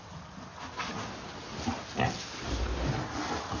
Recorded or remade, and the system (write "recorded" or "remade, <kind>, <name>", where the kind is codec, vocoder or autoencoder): recorded